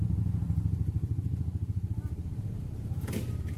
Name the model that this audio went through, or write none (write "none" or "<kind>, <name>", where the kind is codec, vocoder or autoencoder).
vocoder, BigVGAN v2